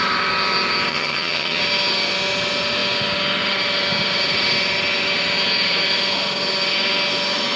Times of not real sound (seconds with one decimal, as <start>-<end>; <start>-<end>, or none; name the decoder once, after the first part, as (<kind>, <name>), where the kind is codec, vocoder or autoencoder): 0.9-1.6 (vocoder, HiFi-GAN)